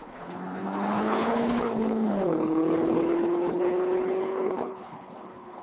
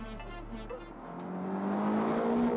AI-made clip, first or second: first